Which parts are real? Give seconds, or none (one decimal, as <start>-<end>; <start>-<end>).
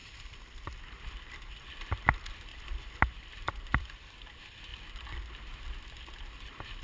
0.0-6.8